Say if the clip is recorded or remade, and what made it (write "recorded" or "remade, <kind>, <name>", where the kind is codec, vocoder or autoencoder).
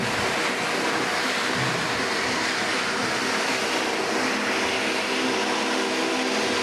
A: recorded